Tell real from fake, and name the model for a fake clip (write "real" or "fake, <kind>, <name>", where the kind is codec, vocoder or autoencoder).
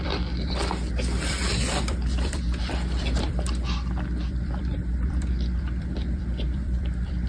fake, vocoder, BigVGAN v2